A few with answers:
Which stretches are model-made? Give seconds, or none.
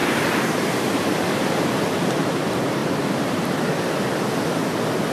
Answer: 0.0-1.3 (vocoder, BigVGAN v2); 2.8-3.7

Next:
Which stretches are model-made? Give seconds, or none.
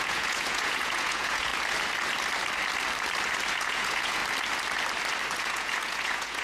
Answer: 0.0-1.5 (vocoder, Vocos); 3.5-4.2; 5.4-6.4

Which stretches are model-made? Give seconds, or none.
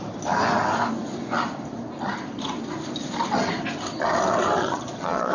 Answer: 4.6-5.3 (vocoder, Vocos)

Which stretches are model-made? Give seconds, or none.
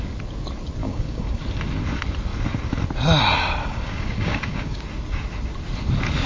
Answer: 0.8-1.4 (codec, DAC); 3.6-4.8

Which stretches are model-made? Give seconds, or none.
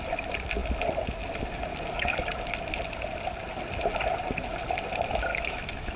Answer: 5.3-6.0 (autoencoder, DAC-VAE)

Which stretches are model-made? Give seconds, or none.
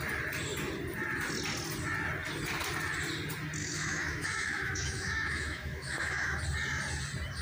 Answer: 3.6-6.4 (autoencoder, DAC-VAE)